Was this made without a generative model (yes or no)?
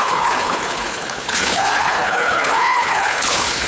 no